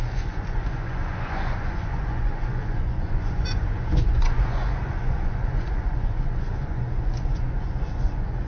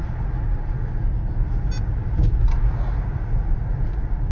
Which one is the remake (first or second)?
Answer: first